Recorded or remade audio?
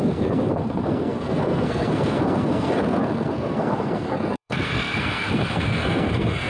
remade